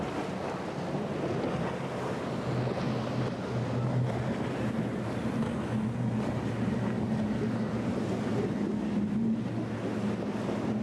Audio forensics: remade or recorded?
recorded